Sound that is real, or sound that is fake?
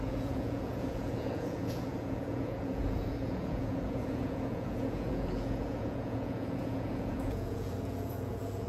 fake